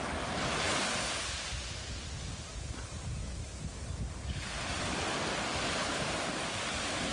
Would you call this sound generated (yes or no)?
no